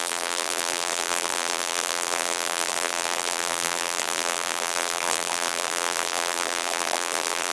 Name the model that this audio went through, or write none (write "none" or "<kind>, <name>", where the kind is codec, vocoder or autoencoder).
vocoder, BigVGAN v2